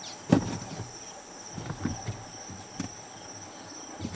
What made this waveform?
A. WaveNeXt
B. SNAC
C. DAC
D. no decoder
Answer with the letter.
D